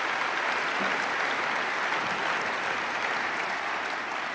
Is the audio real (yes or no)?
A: yes